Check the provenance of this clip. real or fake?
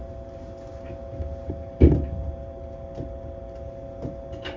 real